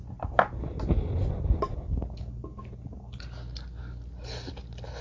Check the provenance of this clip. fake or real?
real